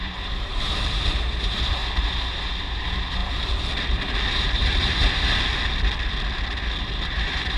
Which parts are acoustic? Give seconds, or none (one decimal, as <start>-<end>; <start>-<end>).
1.8-2.7; 3.2-4.4; 5.0-6.8